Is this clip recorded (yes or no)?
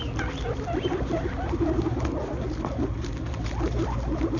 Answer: yes